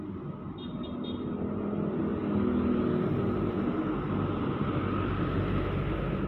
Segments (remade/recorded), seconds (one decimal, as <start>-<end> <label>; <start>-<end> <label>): 0.0-6.3 recorded